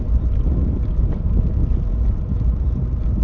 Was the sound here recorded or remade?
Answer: recorded